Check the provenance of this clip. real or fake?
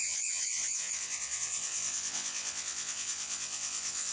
fake